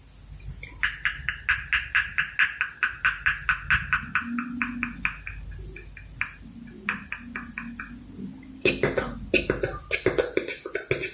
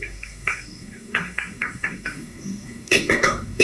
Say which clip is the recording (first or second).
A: first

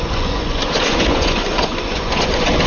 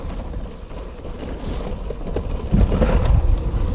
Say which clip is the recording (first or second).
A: second